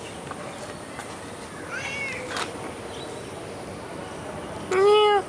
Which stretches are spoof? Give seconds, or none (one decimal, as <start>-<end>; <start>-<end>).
none